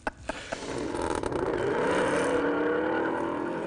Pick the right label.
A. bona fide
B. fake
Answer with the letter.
A